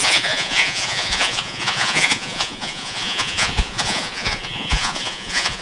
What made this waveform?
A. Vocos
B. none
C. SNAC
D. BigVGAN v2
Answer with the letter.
A